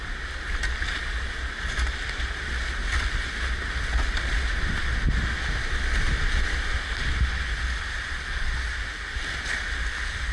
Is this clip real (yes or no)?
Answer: yes